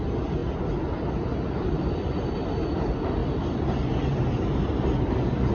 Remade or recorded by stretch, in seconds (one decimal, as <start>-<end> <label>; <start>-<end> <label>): 0.0-5.5 recorded